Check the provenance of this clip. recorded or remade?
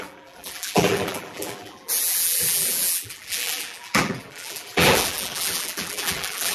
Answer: remade